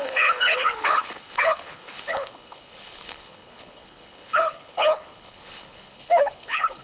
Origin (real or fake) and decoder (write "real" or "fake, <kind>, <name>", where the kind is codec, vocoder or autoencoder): fake, codec, HILCodec